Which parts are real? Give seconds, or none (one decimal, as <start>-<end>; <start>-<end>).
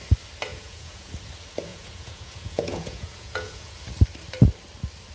0.0-0.5; 1.1-1.7; 3.8-5.1